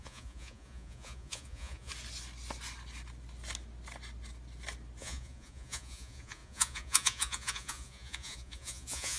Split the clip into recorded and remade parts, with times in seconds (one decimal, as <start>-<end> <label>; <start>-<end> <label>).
0.0-1.9 remade; 1.9-5.0 recorded; 5.0-9.2 remade